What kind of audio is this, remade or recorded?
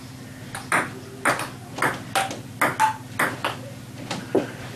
recorded